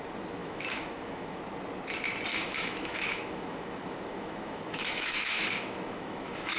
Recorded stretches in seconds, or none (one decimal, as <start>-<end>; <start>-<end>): 0.0-0.4; 1.4-2.3